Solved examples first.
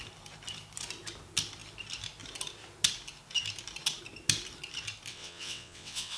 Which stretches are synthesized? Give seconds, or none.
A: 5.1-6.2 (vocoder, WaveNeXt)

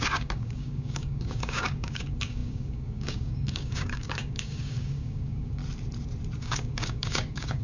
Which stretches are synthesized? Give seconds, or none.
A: 0.0-5.6 (codec, DAC); 6.4-7.6

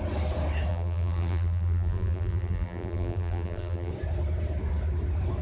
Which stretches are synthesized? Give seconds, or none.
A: 0.7-3.9 (vocoder, BigVGAN v2)

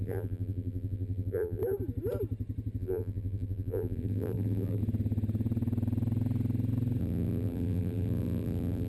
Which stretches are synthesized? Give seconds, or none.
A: 0.0-1.6 (vocoder, BigVGAN v2); 2.8-4.8; 7.0-8.9

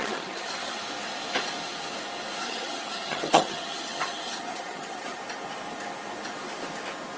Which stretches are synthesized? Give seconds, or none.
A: 0.0-0.8 (vocoder, HiFi-GAN); 2.4-5.2

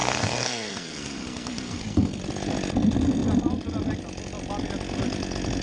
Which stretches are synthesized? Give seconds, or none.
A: 0.0-2.2 (codec, SNAC)